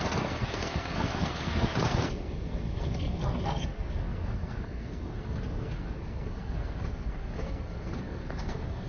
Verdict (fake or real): fake